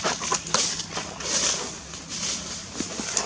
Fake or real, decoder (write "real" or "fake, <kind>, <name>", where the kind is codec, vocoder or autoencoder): real